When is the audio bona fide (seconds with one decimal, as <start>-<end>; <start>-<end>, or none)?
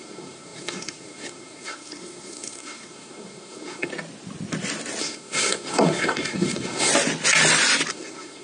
3.9-5.0; 6.9-7.9